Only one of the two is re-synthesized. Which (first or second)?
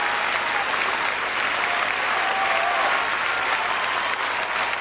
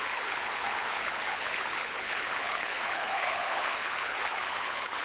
second